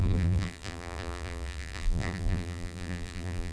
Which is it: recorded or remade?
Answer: remade